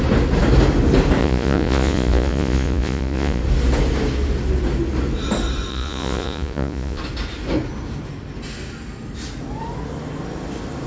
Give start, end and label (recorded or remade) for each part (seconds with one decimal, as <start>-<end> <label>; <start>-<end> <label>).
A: 0.0-1.2 recorded; 1.2-3.4 remade; 3.4-5.7 recorded; 5.7-7.0 remade; 7.0-10.9 recorded